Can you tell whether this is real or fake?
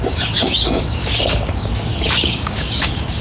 fake